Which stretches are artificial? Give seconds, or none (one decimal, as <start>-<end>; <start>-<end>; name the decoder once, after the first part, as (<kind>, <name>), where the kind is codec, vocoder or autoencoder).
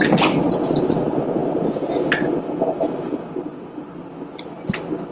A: none